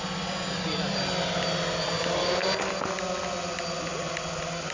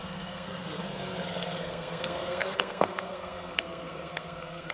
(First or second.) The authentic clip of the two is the first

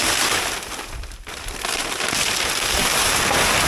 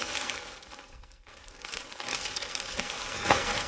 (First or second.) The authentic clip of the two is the first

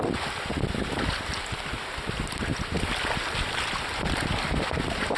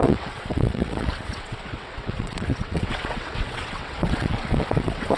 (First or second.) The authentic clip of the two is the first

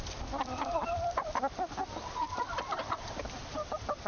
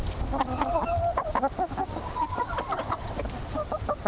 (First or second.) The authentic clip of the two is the second